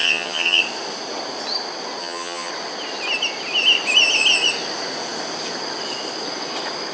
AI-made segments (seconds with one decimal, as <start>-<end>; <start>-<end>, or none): 0.0-0.6; 2.0-2.5